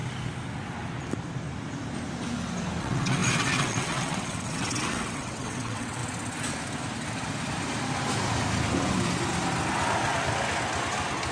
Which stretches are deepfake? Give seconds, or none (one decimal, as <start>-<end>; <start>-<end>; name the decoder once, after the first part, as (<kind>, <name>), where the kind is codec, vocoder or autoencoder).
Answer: 2.8-6.0 (vocoder, WaveNeXt)